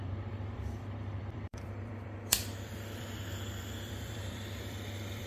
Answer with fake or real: fake